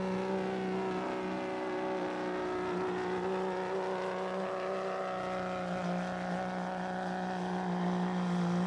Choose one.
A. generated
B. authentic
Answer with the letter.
B